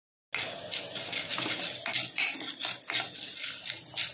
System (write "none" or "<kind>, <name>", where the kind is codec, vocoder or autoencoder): none